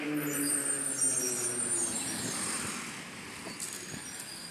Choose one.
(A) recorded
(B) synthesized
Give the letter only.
A